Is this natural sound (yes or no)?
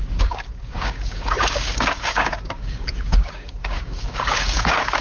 no